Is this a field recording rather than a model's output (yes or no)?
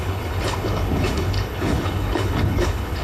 no